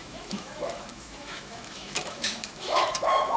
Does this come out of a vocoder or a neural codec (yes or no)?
yes